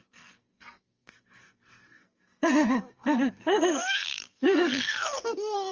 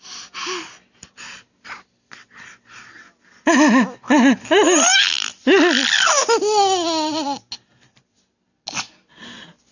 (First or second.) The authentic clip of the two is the second